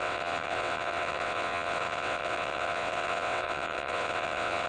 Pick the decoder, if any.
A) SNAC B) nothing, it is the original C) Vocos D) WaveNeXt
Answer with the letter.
D